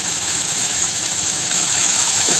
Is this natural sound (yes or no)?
no